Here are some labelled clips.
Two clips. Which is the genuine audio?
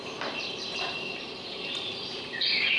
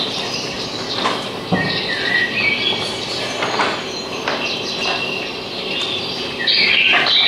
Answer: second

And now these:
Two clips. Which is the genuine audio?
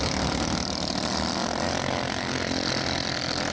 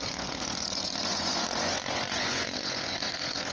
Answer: first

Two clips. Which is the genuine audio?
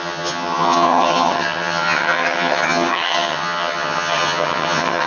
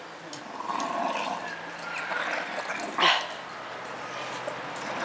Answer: second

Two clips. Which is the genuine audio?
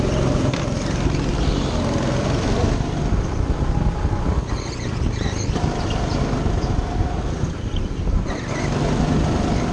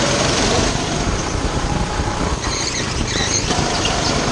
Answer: first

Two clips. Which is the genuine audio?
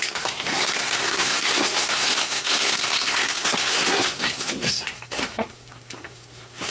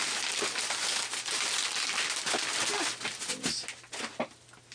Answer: second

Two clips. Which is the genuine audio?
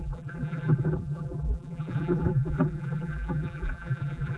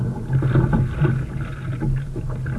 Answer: second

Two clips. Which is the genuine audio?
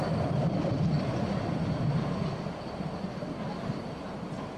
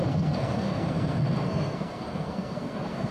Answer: first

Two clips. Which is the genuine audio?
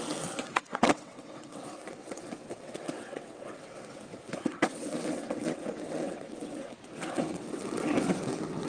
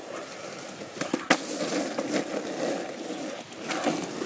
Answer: second